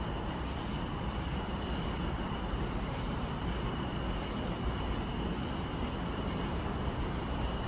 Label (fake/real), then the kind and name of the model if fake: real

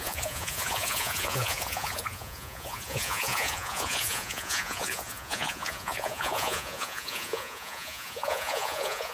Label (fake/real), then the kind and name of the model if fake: fake, vocoder, Vocos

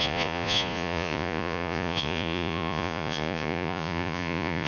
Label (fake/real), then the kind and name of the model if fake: fake, vocoder, Vocos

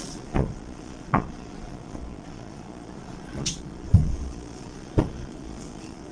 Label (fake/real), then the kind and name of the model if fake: fake, vocoder, Vocos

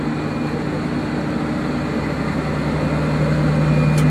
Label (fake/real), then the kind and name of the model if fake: real